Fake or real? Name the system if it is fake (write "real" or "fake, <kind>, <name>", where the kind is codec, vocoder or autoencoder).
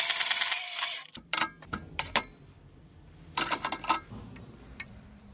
fake, vocoder, BigVGAN v2